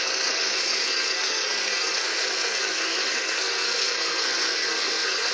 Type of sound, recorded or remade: remade